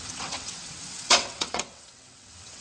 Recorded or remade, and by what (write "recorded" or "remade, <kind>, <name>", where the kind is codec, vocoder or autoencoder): remade, vocoder, WaveNeXt